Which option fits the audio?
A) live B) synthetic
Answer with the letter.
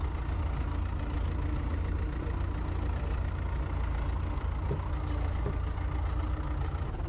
A